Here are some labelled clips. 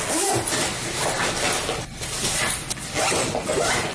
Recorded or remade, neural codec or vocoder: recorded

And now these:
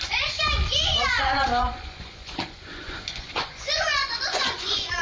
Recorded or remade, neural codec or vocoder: remade, vocoder, Vocos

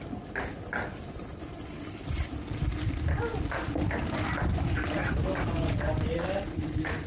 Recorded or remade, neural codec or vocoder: recorded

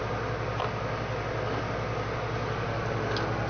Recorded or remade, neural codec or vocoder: recorded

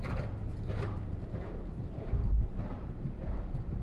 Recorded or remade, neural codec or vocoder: remade, vocoder, BigVGAN v2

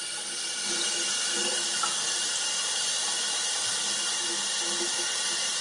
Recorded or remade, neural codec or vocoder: recorded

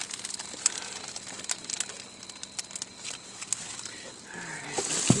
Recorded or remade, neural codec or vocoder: recorded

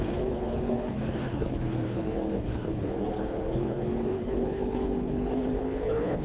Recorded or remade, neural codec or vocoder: remade, codec, HILCodec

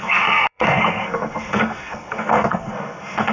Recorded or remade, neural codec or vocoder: remade, codec, SNAC